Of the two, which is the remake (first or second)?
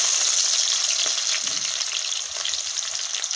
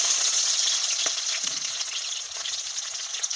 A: second